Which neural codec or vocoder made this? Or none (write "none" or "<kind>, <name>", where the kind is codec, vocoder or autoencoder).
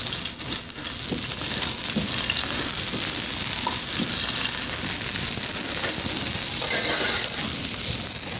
none